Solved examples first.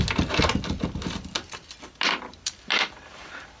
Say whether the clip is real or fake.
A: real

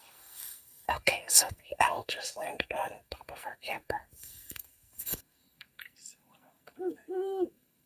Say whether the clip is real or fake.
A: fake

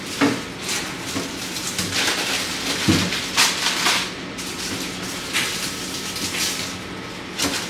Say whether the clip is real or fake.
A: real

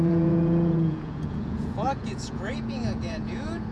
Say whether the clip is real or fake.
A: fake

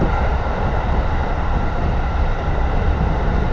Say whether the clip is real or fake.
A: real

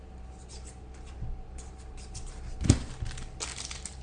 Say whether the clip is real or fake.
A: real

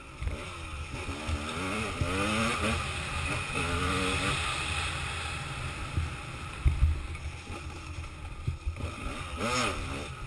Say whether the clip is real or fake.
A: real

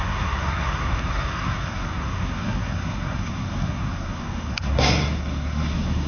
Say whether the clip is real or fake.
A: fake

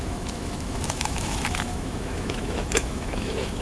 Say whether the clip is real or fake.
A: fake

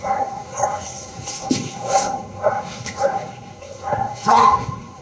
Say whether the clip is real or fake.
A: fake